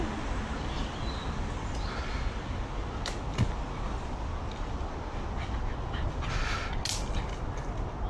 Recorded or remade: recorded